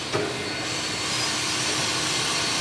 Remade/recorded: recorded